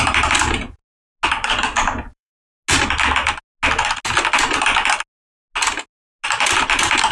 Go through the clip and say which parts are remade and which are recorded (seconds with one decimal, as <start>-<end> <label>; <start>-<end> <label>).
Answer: 0.0-0.8 remade; 0.8-1.3 recorded; 1.3-2.3 remade; 2.3-6.6 recorded; 6.6-7.1 remade